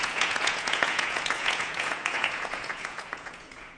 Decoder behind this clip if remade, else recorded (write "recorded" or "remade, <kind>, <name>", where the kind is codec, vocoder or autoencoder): remade, vocoder, Vocos